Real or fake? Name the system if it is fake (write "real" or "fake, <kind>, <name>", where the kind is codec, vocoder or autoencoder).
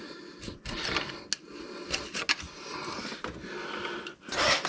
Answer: real